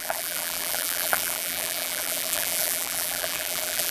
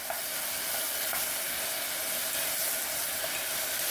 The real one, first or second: second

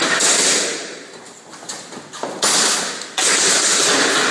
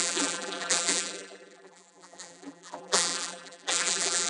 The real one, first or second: first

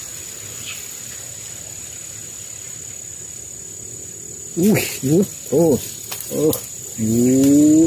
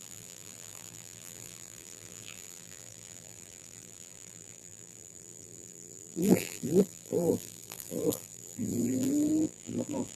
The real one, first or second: first